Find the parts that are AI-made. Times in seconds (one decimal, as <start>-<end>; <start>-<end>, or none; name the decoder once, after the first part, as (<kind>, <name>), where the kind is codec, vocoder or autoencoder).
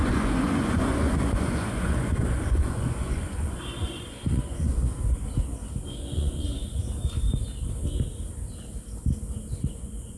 0.0-4.9 (vocoder, Vocos); 5.9-6.8; 9.7-10.2